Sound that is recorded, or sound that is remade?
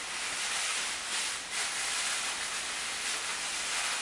recorded